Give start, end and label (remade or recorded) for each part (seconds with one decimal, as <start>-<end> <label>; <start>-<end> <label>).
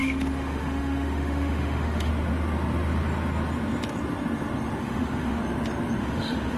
0.0-2.1 remade; 2.1-4.8 recorded; 4.8-5.4 remade; 5.4-6.0 recorded; 6.0-6.6 remade